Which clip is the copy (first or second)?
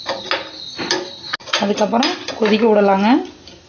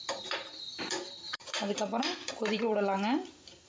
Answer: second